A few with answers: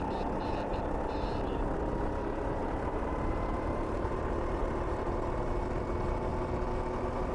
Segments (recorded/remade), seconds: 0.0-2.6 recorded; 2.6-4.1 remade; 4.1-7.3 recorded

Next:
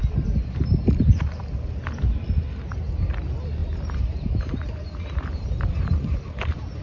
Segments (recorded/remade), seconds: 0.0-3.6 recorded; 3.6-6.8 remade

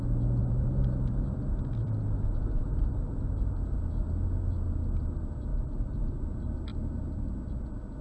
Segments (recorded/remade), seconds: 0.0-0.4 recorded; 0.4-3.3 remade; 3.3-5.5 recorded; 5.5-6.2 remade; 6.2-8.0 recorded

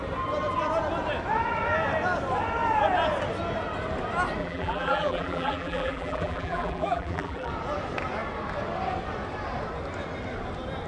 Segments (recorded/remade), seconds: 0.0-4.4 recorded; 4.4-7.5 remade; 7.5-10.9 recorded

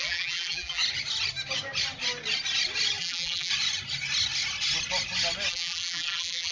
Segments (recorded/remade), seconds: 0.0-0.8 remade; 0.8-3.0 recorded; 3.0-3.5 remade; 3.5-5.5 recorded; 5.5-6.5 remade

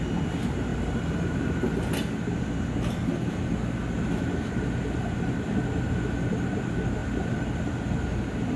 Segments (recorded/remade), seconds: 0.0-0.7 recorded; 0.7-1.5 remade; 1.5-8.6 recorded

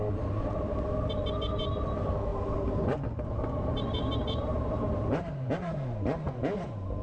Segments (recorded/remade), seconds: 0.0-2.3 recorded; 2.3-5.5 remade; 5.5-7.0 recorded